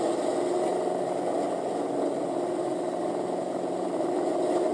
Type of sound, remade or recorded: recorded